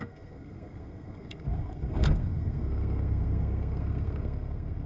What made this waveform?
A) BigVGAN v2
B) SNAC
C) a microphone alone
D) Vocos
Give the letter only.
B